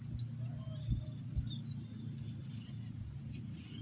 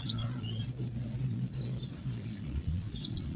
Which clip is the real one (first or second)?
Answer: first